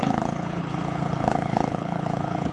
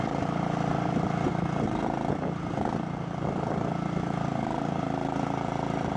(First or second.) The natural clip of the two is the second